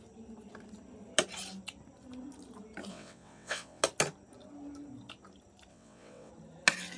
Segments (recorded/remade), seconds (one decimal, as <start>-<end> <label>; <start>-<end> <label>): 0.0-2.9 recorded; 2.9-3.8 remade; 3.8-5.7 recorded; 5.7-6.3 remade; 6.3-7.0 recorded